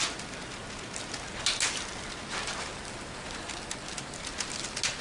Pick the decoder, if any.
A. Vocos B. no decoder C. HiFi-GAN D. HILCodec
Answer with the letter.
B